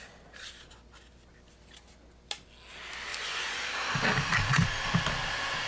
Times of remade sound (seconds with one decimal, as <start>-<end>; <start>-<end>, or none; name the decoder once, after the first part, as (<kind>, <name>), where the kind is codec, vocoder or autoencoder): 3.1-3.6 (vocoder, Vocos)